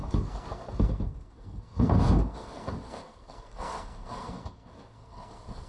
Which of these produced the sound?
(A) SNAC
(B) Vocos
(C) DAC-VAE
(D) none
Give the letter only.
A